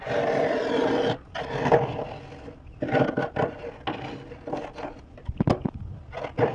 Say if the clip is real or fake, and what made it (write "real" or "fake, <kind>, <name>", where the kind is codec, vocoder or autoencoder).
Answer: real